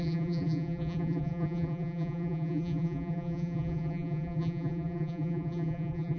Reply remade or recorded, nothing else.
remade